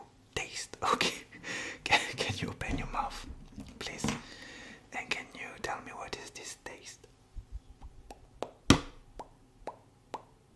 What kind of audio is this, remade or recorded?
recorded